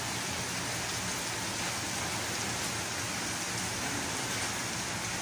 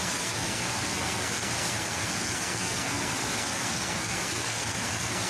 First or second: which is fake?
second